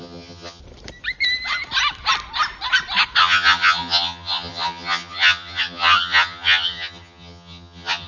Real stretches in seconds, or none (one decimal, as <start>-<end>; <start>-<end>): 0.6-3.2